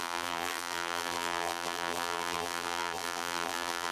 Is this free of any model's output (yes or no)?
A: no